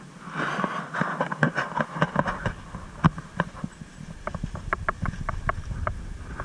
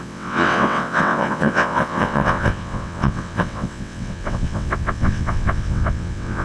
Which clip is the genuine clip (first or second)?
first